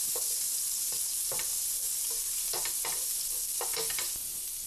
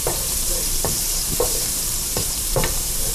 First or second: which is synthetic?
second